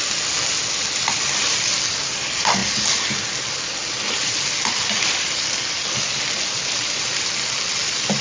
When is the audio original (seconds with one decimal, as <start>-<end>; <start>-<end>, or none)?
0.0-8.2